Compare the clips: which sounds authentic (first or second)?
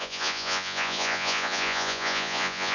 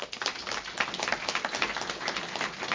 second